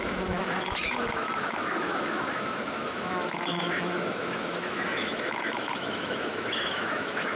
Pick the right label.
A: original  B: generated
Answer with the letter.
B